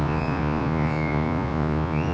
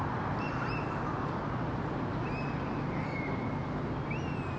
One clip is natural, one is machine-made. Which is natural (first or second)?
second